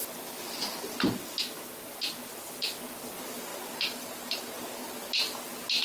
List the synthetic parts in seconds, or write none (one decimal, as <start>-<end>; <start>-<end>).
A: 1.2-1.7